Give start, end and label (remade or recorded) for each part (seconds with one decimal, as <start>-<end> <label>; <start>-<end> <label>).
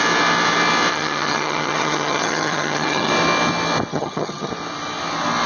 0.0-0.9 recorded; 0.9-3.1 remade; 3.1-3.9 recorded; 3.9-4.5 remade; 4.5-5.5 recorded